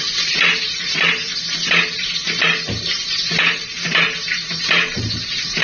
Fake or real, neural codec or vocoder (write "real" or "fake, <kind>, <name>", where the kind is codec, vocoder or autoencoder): fake, vocoder, BigVGAN v2